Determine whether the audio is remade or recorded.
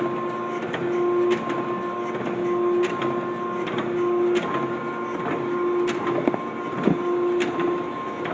recorded